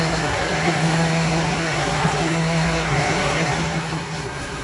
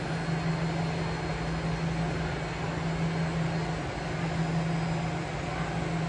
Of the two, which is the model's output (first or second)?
first